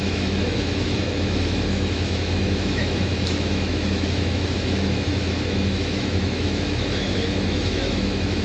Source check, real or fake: fake